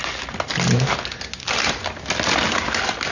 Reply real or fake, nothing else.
real